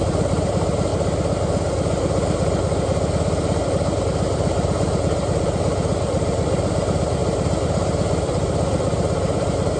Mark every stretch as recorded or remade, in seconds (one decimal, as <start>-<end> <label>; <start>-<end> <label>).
0.0-0.9 remade; 0.9-4.0 recorded; 4.0-9.8 remade